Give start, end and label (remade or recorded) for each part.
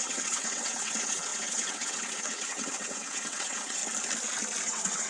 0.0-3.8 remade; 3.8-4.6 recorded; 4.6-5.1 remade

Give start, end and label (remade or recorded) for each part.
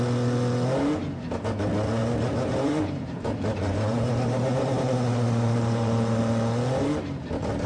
0.0-2.0 recorded; 2.0-6.2 remade; 6.2-7.7 recorded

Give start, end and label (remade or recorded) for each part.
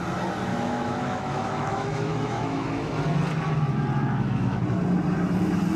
0.0-0.5 recorded; 0.5-2.9 remade; 2.9-4.0 recorded; 4.0-4.6 remade; 4.6-5.8 recorded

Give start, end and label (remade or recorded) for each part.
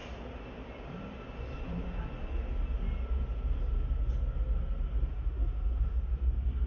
0.0-5.1 recorded; 5.1-6.0 remade; 6.0-6.7 recorded